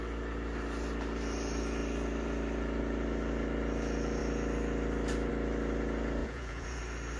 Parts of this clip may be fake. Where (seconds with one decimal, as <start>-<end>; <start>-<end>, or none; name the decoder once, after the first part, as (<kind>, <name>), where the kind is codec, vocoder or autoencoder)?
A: 6.2-6.8 (vocoder, Vocos)